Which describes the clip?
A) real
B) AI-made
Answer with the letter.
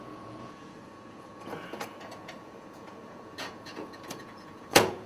B